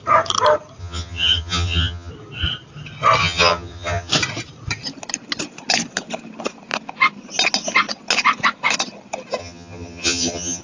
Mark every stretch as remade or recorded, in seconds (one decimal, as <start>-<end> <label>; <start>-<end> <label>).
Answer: 0.0-0.8 recorded; 0.8-2.1 remade; 2.1-3.2 recorded; 3.2-4.1 remade; 4.1-9.4 recorded; 9.4-10.6 remade